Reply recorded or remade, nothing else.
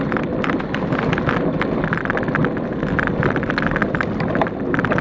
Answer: recorded